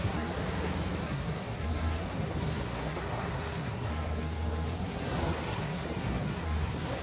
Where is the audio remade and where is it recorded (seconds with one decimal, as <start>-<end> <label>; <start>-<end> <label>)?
0.0-0.4 remade; 0.4-1.0 recorded; 1.0-7.0 remade